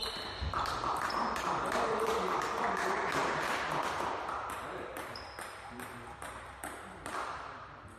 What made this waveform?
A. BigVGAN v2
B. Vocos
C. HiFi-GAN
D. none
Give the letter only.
A